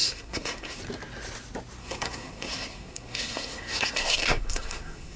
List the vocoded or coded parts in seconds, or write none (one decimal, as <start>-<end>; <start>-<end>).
0.0-0.8; 1.8-5.2